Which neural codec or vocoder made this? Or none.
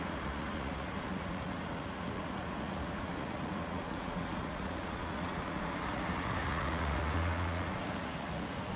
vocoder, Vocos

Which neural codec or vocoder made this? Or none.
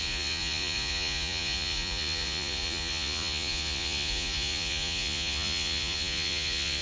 vocoder, Vocos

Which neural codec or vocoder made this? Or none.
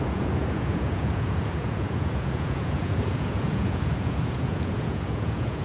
vocoder, Vocos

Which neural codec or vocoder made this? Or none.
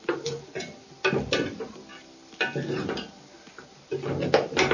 none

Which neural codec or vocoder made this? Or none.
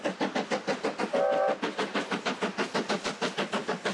none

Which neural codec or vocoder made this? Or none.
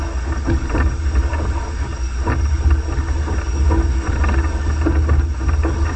none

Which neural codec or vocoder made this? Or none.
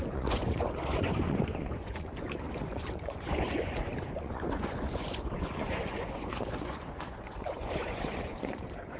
vocoder, Vocos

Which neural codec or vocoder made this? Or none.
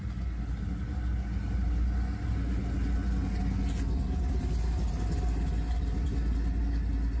none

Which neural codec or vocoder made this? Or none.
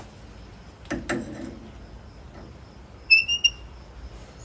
none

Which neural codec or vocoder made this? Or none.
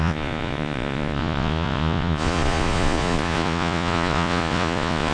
vocoder, Vocos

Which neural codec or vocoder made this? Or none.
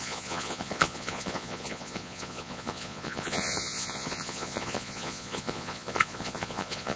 vocoder, Vocos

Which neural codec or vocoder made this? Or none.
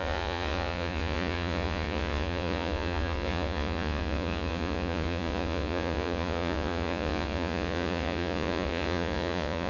vocoder, Vocos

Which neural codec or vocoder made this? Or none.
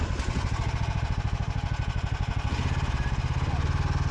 none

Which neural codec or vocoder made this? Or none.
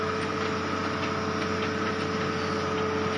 none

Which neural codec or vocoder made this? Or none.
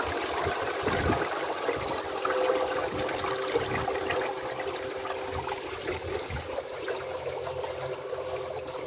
none